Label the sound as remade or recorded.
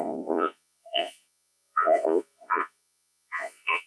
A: remade